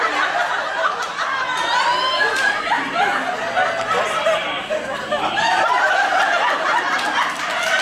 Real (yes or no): yes